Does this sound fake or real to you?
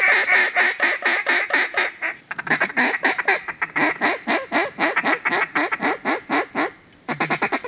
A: real